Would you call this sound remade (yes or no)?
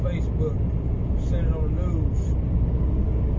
no